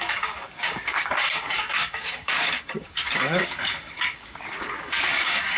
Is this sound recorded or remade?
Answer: remade